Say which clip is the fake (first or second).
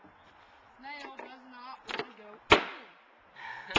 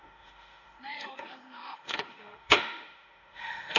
second